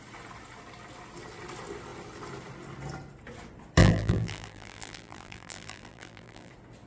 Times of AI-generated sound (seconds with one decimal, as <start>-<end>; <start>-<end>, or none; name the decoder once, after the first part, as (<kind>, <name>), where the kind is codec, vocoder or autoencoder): 3.8-6.5 (vocoder, BigVGAN v2)